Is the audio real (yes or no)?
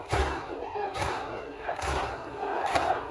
no